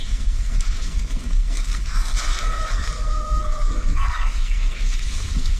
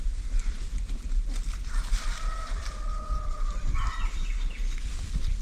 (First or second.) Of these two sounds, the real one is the second